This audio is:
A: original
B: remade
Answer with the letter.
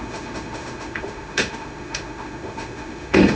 B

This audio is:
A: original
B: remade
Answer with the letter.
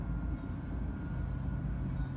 A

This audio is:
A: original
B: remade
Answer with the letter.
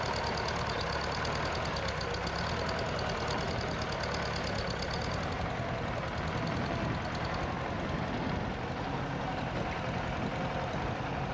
A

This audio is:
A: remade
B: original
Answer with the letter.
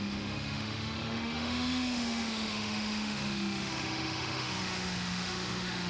A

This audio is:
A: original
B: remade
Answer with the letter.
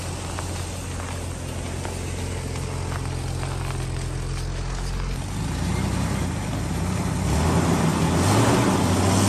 A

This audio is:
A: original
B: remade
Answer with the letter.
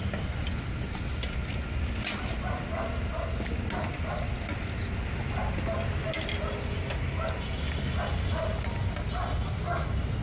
A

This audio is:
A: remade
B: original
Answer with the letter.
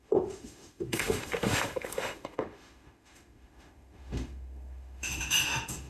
A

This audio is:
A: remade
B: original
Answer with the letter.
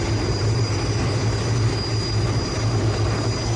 B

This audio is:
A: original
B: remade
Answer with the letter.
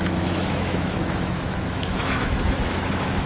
B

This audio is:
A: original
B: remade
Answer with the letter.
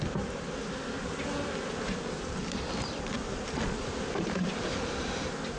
A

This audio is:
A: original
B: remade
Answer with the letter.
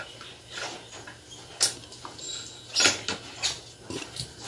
A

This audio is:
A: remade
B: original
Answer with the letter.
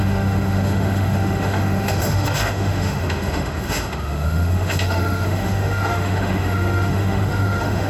A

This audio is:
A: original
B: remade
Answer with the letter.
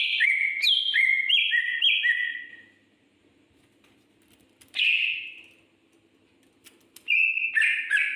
A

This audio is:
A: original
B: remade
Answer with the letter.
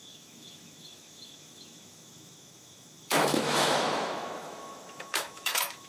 B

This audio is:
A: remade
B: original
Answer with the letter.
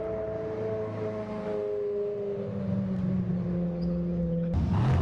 B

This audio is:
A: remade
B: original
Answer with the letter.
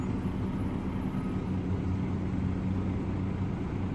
B